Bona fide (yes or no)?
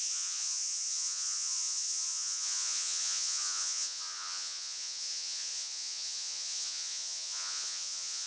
no